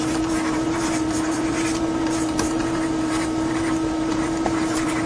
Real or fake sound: fake